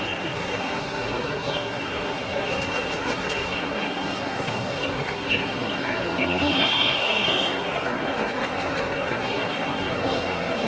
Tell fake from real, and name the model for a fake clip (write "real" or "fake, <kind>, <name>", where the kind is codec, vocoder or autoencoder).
fake, codec, SNAC